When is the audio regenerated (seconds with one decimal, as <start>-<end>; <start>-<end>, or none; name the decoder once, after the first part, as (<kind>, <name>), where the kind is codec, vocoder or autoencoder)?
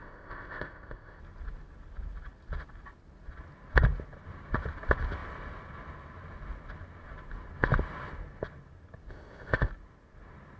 0.0-1.2 (codec, ZipCodec); 9.1-9.7